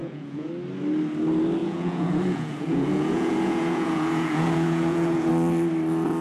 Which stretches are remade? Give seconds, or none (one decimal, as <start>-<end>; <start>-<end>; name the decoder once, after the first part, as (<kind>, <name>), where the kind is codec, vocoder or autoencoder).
0.0-0.5 (vocoder, Vocos); 1.6-5.3